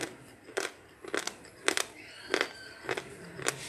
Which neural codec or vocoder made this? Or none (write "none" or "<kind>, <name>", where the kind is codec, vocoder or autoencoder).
none